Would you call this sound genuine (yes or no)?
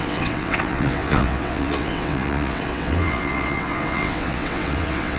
no